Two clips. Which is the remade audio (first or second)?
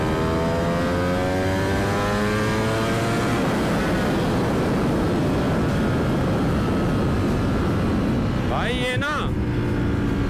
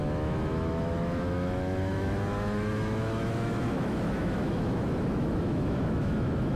second